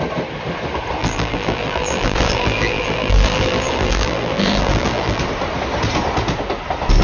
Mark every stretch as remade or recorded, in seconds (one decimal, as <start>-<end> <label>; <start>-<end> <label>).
0.0-1.0 recorded; 1.0-5.2 remade; 5.2-7.0 recorded